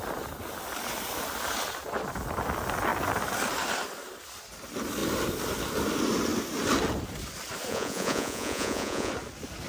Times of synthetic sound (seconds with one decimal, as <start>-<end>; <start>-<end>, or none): 7.7-9.1